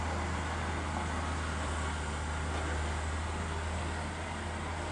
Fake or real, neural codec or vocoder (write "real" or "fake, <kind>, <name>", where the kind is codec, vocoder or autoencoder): real